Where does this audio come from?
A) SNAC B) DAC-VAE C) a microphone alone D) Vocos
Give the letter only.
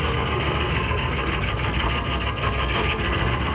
A